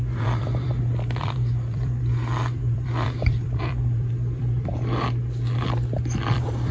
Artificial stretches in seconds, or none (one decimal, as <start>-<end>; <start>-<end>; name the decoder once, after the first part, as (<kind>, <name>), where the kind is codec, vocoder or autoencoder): 0.0-0.7 (vocoder, BigVGAN v2); 1.2-4.7; 6.2-6.7